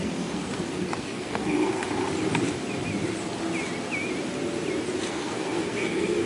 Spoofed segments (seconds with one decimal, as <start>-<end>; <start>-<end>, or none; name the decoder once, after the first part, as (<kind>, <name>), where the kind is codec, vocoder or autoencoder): 0.0-1.8 (codec, SNAC); 5.1-6.3